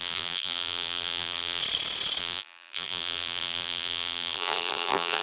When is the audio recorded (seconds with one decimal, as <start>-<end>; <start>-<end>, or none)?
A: 1.6-2.2